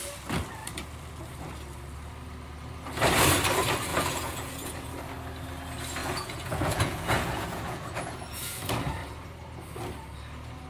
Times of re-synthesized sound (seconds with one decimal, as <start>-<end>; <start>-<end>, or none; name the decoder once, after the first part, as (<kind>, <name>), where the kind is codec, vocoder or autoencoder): 3.9-4.7 (vocoder, Vocos); 6.0-8.6